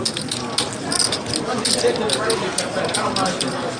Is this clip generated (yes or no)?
no